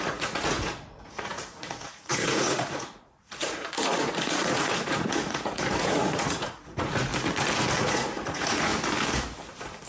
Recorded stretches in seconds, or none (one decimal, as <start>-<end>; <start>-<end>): 7.1-7.8; 8.7-9.9